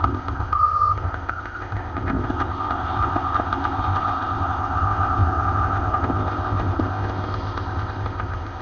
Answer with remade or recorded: remade